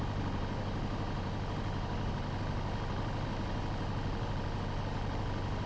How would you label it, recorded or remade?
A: recorded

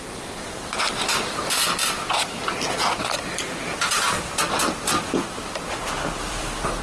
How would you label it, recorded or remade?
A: remade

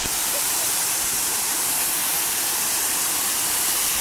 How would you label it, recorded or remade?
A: remade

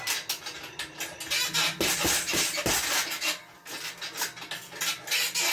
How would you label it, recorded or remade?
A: recorded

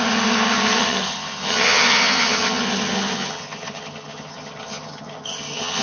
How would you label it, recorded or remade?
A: remade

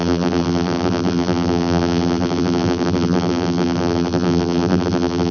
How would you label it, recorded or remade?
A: remade